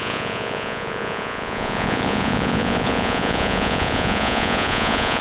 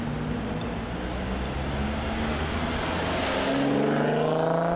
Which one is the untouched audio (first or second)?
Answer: second